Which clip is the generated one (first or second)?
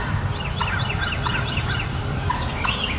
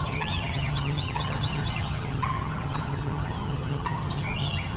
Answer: second